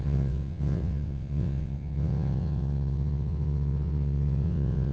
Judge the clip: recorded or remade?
remade